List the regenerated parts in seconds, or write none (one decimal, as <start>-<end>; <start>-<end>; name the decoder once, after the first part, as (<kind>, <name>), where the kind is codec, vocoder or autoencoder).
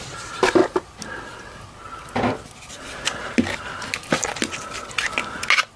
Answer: 0.6-2.7 (vocoder, BigVGAN v2); 4.1-4.8